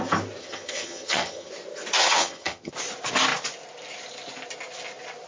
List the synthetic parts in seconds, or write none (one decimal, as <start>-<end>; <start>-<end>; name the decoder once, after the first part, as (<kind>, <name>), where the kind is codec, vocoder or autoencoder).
0.4-1.5 (vocoder, HiFi-GAN); 2.0-2.7